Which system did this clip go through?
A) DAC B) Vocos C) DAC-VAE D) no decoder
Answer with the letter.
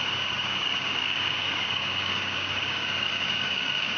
A